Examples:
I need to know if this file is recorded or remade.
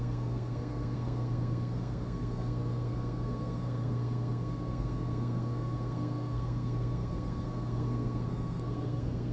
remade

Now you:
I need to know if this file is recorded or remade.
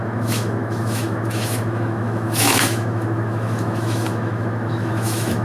remade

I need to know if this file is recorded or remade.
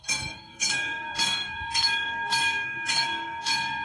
remade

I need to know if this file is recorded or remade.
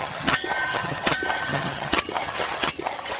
remade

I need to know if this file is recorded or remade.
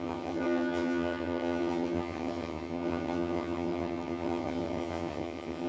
remade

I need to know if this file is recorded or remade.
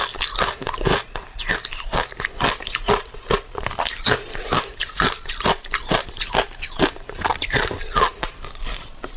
recorded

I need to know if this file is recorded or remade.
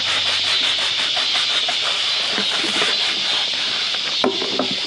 recorded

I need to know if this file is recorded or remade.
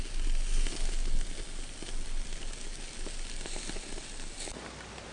recorded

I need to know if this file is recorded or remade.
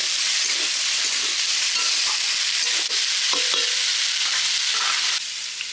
recorded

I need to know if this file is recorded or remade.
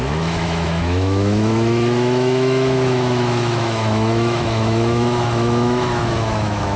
remade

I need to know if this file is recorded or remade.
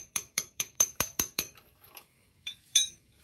remade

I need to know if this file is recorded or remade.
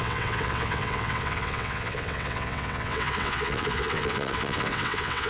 remade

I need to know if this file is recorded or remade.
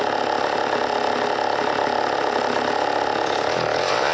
recorded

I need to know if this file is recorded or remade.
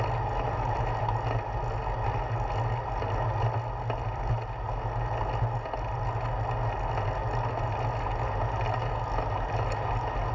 recorded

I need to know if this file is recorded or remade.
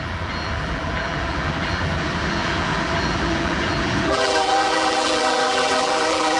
remade